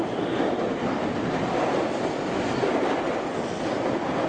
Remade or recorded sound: recorded